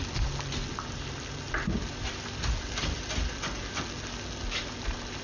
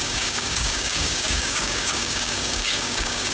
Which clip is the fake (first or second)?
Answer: second